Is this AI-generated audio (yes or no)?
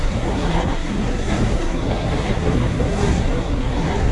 yes